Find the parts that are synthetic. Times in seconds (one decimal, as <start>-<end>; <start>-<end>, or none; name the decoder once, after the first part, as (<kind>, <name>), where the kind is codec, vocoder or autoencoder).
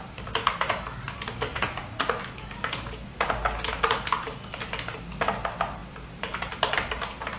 1.5-2.2 (vocoder, Vocos)